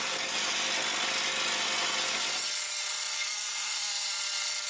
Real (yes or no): yes